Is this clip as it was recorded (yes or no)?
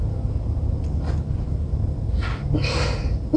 yes